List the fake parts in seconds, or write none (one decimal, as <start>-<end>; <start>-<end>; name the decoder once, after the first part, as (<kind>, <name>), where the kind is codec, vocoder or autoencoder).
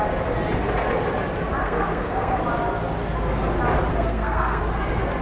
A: 1.6-2.4 (codec, SNAC); 3.9-4.6